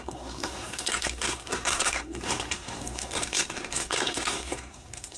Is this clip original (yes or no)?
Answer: no